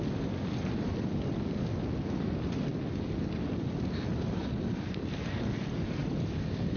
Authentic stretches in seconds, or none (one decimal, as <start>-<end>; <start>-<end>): 0.0-6.8